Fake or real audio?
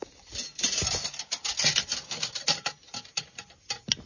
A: real